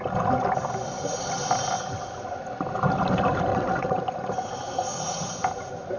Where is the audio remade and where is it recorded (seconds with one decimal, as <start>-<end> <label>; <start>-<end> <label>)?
0.0-3.5 recorded; 3.5-4.0 remade; 4.0-6.0 recorded